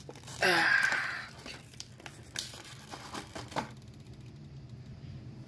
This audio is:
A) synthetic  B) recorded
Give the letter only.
A